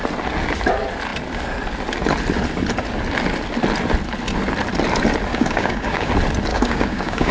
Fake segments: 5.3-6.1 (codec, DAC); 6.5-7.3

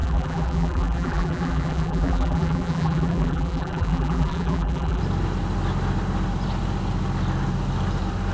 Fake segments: 0.0-5.0 (vocoder, BigVGAN v2)

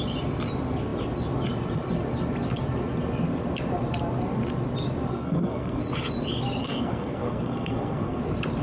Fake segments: 5.1-5.8 (codec, SNAC); 6.6-8.2

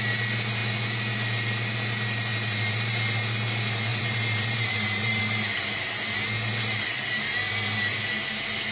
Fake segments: 2.3-3.0 (vocoder, BigVGAN v2); 3.9-5.2

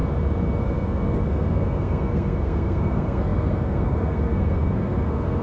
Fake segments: 0.6-5.4 (codec, SNAC)

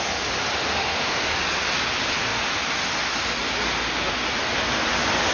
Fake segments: 0.8-1.3 (autoencoder, DAC-VAE)